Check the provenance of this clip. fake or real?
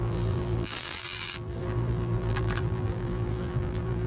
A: fake